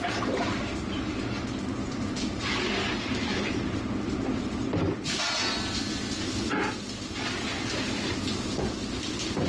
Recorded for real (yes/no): yes